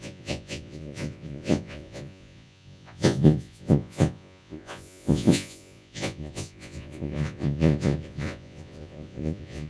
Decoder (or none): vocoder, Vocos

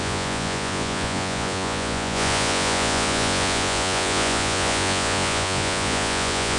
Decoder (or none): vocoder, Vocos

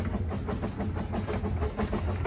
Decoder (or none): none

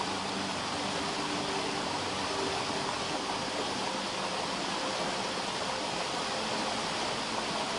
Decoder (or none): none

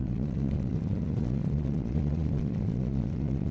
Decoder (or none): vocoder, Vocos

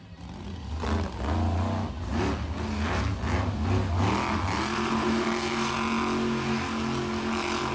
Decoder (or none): none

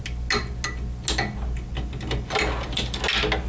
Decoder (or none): none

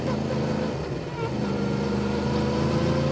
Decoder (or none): none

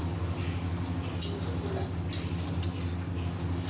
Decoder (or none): none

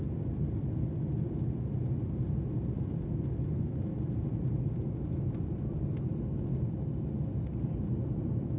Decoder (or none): none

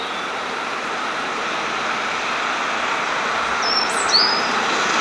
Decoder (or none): none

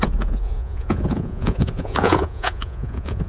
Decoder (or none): vocoder, Vocos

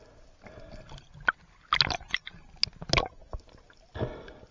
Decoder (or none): none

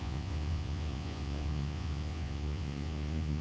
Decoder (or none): vocoder, Vocos